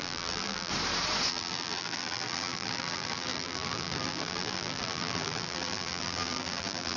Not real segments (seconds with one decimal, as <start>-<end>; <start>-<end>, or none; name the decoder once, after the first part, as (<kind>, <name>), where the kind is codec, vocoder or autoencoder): 0.0-0.7 (vocoder, BigVGAN v2); 1.3-7.0